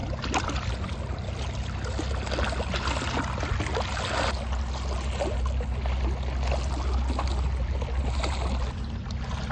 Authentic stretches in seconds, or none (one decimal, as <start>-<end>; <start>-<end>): 0.0-9.5